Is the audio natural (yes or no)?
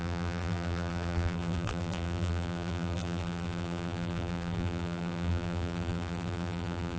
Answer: no